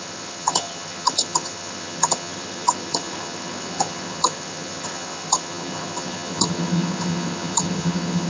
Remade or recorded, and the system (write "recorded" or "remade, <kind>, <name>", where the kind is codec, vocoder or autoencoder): remade, vocoder, HiFi-GAN